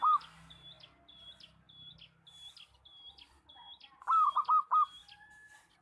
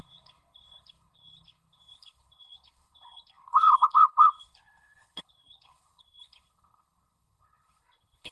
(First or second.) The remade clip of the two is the second